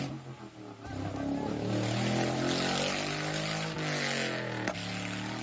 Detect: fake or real real